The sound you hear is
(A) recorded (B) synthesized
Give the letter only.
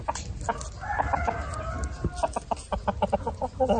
A